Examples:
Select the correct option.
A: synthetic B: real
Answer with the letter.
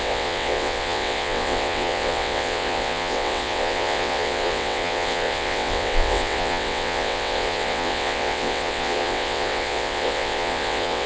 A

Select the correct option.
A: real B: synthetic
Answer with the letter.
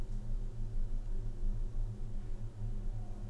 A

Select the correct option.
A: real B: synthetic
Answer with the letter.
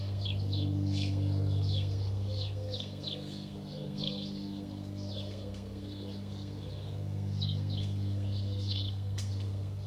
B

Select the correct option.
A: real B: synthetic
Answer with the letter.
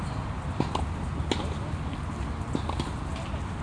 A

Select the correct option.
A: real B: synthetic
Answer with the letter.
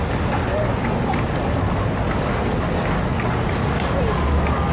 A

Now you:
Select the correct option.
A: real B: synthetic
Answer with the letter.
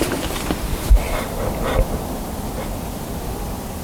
B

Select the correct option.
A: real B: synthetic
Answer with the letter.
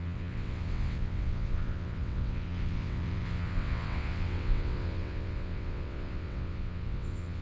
B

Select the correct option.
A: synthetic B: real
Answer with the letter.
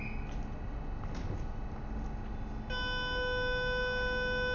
B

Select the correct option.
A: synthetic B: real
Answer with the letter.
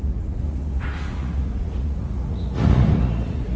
A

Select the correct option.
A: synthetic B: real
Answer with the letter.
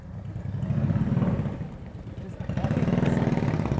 B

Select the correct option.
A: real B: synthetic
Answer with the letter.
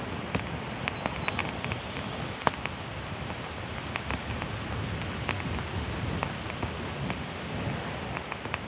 A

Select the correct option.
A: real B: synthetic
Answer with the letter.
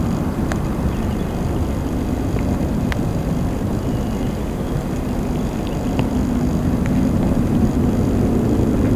A